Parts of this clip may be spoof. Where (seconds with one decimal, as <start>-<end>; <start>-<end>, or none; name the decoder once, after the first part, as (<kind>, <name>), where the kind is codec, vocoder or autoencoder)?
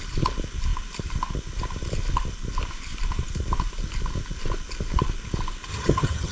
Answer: 5.7-6.3 (vocoder, HiFi-GAN)